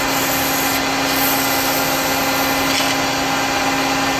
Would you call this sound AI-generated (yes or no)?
no